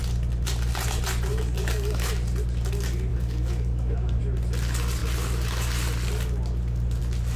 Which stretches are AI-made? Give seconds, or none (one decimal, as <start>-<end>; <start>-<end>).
1.3-2.1; 3.1-4.2